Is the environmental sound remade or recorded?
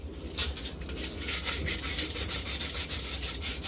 recorded